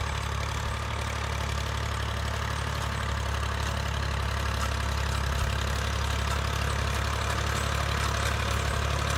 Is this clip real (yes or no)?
yes